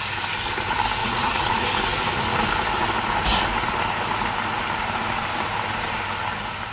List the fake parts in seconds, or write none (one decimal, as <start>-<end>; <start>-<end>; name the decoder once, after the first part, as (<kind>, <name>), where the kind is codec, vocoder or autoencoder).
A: 1.0-1.5 (vocoder, Vocos)